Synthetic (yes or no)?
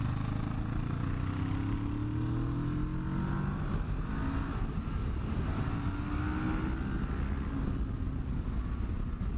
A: no